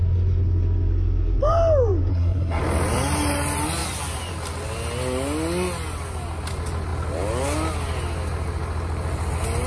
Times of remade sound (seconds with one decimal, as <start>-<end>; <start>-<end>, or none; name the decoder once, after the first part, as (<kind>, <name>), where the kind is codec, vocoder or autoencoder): 2.1-2.6 (codec, SNAC)

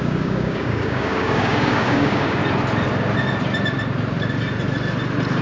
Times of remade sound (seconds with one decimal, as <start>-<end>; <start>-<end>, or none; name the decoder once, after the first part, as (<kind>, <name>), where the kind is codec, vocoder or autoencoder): 0.0-2.4 (codec, DAC)

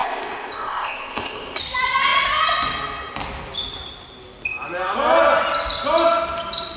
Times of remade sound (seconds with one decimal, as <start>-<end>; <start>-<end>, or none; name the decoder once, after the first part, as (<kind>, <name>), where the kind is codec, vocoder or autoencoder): 0.0-1.6 (codec, ZipCodec)

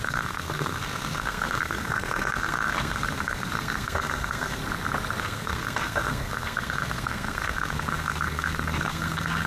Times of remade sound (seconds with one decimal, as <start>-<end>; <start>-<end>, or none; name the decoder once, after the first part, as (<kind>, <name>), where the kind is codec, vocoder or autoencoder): 0.0-4.6 (codec, SNAC); 5.2-9.5

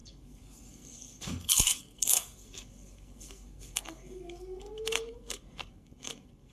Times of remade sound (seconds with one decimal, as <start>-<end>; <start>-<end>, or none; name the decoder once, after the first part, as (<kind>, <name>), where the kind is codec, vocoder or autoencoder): 0.0-6.5 (codec, SNAC)

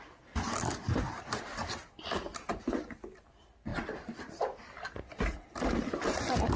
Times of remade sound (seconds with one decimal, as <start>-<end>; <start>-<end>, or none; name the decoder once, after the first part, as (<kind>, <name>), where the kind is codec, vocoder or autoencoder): none

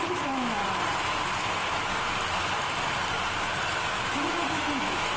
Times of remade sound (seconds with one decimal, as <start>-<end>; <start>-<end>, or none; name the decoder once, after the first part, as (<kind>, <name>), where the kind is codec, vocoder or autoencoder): 0.0-0.6 (autoencoder, DAC-VAE); 3.7-5.2